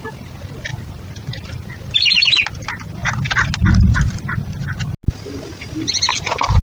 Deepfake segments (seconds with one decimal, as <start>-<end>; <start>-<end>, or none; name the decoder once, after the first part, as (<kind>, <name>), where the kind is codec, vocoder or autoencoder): none